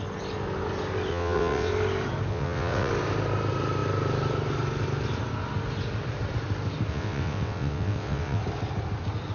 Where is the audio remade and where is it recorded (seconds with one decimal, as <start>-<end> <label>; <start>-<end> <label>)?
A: 0.0-1.1 recorded; 1.1-1.7 remade; 1.7-2.3 recorded; 2.3-2.9 remade; 2.9-6.9 recorded; 6.9-8.4 remade; 8.4-9.3 recorded